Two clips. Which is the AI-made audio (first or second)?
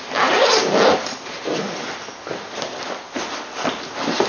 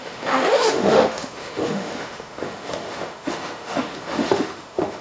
second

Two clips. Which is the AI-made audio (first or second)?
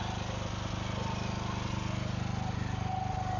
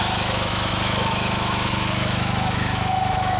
second